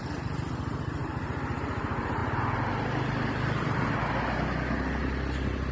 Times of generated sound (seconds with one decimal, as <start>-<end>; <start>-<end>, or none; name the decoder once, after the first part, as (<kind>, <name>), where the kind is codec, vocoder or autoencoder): none